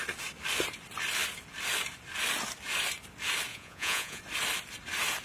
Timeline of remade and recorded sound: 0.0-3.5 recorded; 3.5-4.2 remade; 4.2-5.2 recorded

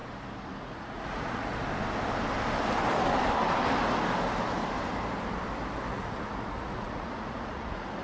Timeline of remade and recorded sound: 0.0-0.6 recorded; 0.6-1.5 remade; 1.5-5.9 recorded; 5.9-8.0 remade

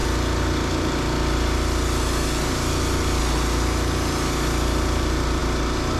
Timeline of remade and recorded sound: 0.0-6.0 recorded

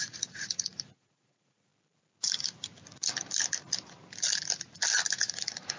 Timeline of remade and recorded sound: 0.0-1.7 remade; 1.7-5.2 recorded; 5.2-5.8 remade

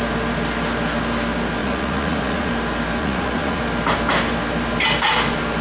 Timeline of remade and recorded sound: 0.0-1.6 recorded; 1.6-2.5 remade; 2.5-3.0 recorded; 3.0-3.6 remade; 3.6-5.6 recorded